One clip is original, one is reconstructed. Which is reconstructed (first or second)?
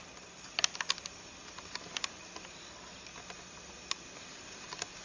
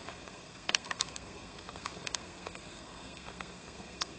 second